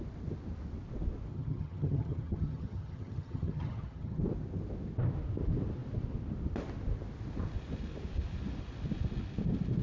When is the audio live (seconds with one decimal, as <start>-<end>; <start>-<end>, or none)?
0.0-1.3; 4.2-9.8